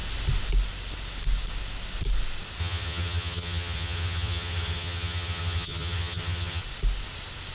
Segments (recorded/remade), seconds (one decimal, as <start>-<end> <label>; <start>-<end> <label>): 0.0-2.6 recorded; 2.6-6.6 remade; 6.6-7.5 recorded